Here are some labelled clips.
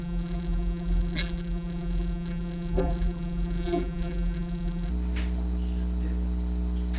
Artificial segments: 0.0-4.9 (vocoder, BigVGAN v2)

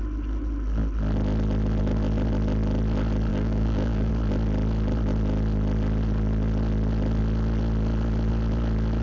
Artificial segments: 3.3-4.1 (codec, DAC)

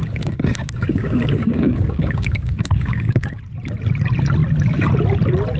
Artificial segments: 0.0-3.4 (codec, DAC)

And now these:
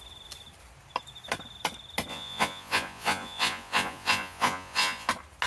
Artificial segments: 2.1-5.1 (vocoder, Vocos)